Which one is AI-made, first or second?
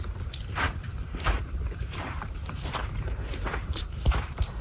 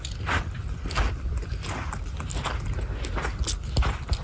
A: first